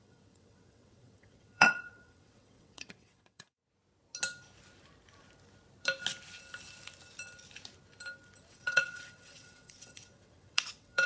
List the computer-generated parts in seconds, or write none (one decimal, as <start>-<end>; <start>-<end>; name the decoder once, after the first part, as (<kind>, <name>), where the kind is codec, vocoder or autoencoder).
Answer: 0.0-3.6 (vocoder, WaveNeXt); 8.5-11.1

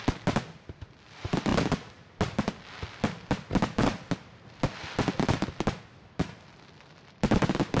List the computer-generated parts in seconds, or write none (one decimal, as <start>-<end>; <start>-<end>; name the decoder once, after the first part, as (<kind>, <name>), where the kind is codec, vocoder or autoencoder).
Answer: none

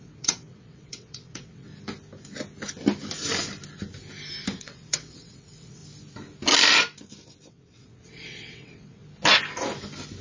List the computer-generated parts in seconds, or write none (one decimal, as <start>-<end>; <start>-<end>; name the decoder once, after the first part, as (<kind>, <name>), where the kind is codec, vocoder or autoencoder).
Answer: 0.0-1.7 (vocoder, WaveNeXt); 4.6-5.8; 7.5-9.0

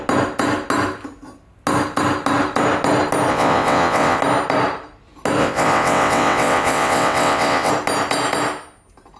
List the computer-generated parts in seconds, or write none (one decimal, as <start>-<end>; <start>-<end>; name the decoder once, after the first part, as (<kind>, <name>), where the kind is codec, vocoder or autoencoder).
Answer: 3.3-4.2 (vocoder, WaveNeXt); 5.4-7.7

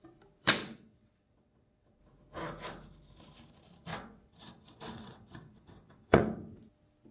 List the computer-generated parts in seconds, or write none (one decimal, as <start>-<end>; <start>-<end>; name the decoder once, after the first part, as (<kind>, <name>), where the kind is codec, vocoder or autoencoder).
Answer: 0.6-2.0 (vocoder, WaveNeXt); 3.9-6.2

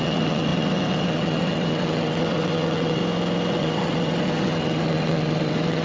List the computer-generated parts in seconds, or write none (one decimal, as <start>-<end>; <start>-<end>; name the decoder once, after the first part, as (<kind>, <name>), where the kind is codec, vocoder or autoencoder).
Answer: 0.0-3.0 (vocoder, WaveNeXt); 3.5-5.8

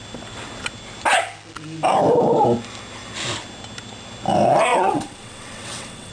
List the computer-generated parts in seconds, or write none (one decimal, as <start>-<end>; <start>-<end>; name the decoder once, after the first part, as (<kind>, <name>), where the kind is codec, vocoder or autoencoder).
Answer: 4.7-6.1 (vocoder, WaveNeXt)